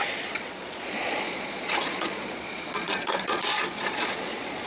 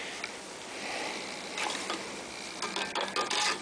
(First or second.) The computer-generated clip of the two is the first